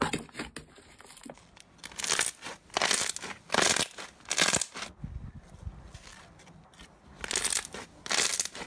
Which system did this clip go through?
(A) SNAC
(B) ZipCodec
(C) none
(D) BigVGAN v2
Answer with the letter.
C